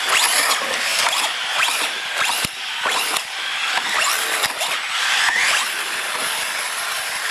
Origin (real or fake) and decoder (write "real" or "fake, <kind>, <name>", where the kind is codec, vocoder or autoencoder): real